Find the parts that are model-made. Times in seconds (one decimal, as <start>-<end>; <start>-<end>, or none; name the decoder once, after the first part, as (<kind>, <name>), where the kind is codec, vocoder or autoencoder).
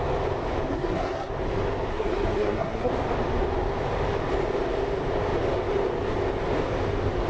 0.7-1.3 (codec, SNAC); 1.9-2.9